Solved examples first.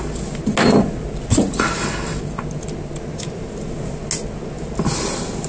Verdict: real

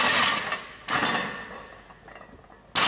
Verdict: real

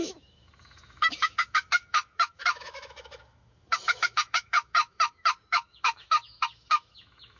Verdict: fake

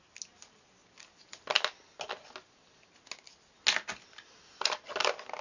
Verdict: real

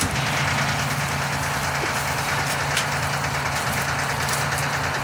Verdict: real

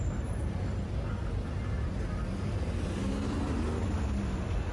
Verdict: real